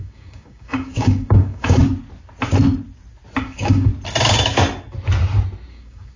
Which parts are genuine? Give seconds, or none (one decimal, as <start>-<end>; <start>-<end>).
1.8-3.4; 3.9-5.7